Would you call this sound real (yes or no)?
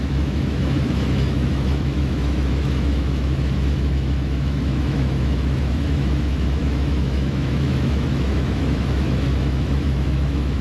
no